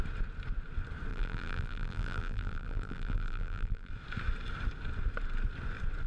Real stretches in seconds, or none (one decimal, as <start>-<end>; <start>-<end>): 0.0-1.1; 3.9-6.1